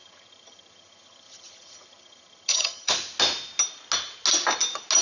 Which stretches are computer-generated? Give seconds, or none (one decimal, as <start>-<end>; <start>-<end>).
0.0-2.9